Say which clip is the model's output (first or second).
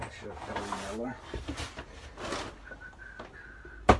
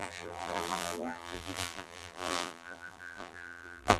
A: second